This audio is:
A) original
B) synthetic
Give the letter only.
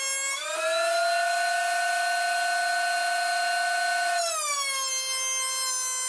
A